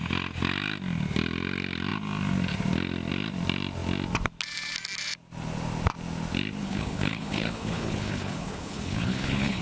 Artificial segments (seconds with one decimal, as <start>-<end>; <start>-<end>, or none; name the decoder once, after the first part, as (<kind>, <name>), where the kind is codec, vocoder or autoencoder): 6.6-9.6 (codec, HILCodec)